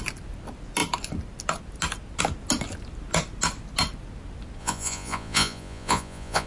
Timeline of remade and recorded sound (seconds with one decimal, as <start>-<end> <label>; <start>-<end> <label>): 0.0-4.6 recorded; 4.6-6.5 remade